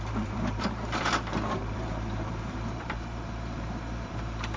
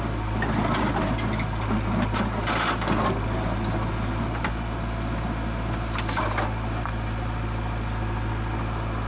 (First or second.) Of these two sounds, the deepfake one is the first